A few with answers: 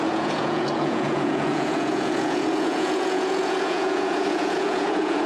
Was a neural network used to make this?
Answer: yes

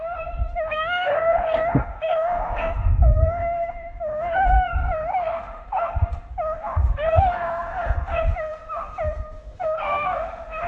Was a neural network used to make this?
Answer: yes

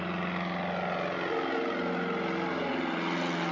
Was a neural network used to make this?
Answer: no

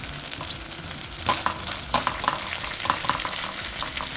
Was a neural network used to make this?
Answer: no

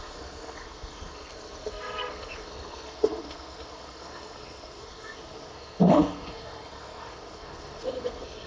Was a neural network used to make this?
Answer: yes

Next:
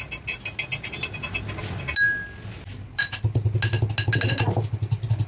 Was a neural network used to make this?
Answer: no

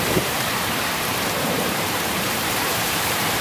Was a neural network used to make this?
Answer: yes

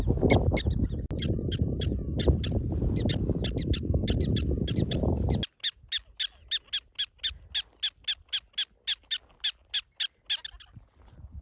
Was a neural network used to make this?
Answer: no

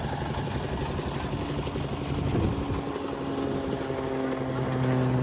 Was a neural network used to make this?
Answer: no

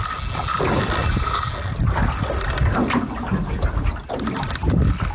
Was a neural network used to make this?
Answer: no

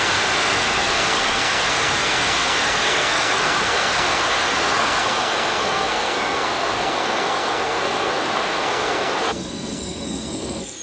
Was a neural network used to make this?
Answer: yes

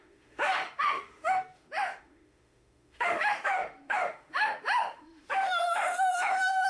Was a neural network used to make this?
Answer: yes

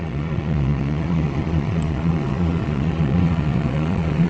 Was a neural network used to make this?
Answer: yes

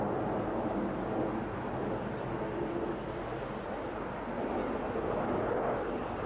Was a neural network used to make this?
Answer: no